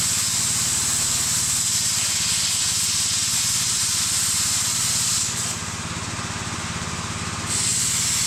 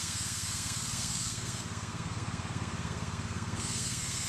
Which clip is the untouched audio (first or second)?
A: first